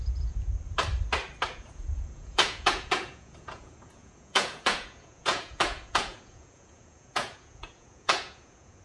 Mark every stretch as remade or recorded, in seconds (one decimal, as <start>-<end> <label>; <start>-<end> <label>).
0.0-0.5 remade; 0.5-1.5 recorded; 1.5-8.8 remade